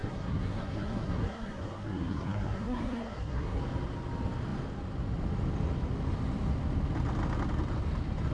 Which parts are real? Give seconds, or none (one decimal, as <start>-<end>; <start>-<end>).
3.6-8.3